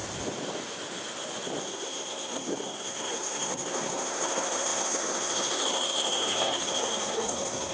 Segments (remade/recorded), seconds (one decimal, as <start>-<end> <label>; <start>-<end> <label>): 0.0-1.6 recorded; 1.6-7.7 remade